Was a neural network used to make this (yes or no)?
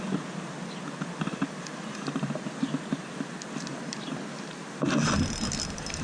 no